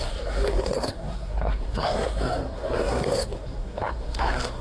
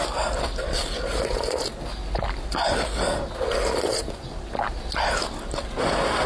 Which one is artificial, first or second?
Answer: first